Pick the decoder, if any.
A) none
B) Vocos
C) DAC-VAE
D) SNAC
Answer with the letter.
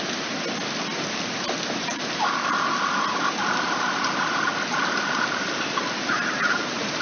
A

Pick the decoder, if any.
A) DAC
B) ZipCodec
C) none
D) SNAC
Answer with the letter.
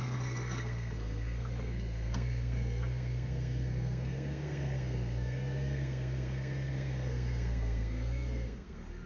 D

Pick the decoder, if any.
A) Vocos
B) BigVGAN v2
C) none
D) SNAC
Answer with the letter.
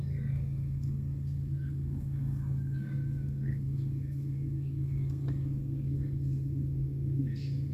D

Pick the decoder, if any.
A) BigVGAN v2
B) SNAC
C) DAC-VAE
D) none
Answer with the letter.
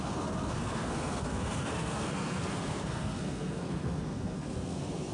B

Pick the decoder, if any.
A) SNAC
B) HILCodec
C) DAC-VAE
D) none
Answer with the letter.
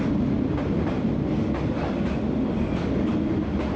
D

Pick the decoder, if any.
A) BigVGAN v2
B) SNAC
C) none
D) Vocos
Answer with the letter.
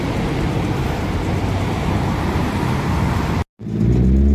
C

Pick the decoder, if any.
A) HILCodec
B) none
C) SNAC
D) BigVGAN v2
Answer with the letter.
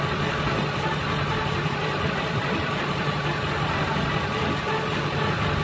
B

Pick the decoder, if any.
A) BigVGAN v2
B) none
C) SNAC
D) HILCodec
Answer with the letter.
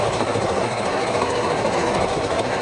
C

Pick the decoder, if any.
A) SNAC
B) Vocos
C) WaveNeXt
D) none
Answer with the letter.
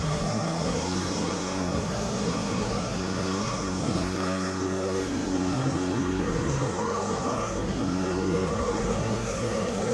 A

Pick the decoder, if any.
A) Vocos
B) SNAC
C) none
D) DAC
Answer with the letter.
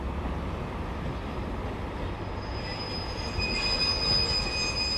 C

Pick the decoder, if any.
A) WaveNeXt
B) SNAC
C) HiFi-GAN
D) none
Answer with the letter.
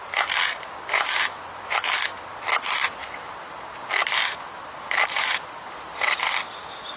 D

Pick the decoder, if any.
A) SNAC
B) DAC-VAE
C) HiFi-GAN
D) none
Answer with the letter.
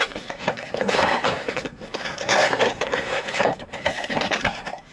A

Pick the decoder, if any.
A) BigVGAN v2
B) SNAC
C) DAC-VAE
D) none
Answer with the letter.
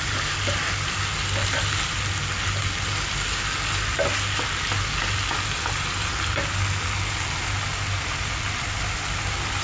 D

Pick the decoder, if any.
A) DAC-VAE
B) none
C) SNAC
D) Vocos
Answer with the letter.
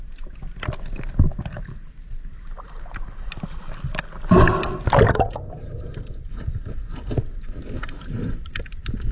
B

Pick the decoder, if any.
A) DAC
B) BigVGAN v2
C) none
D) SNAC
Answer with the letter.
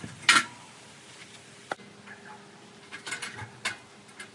C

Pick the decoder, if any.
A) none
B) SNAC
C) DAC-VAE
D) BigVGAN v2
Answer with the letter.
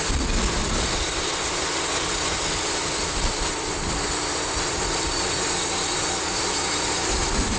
A